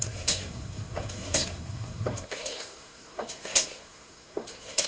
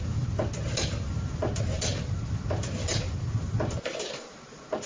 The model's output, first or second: first